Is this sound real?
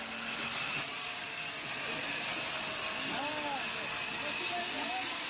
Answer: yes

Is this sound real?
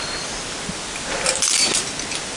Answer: yes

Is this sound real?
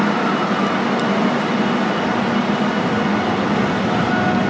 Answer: yes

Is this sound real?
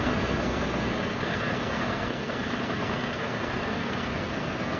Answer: no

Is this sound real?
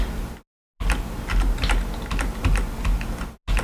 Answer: yes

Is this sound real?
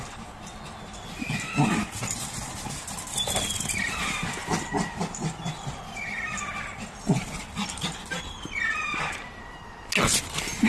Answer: yes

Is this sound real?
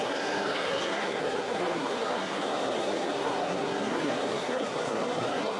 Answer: no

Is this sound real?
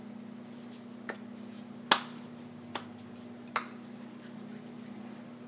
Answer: yes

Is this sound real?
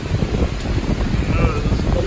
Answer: yes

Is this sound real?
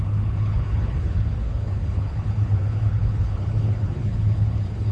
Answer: no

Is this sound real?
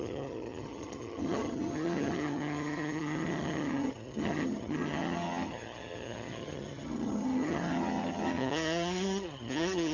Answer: no